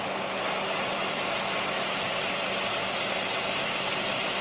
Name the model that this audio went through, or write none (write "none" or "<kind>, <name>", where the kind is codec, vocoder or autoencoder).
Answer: none